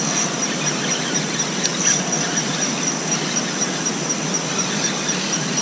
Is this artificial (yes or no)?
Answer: no